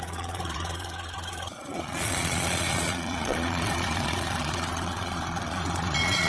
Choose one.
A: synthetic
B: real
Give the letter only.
A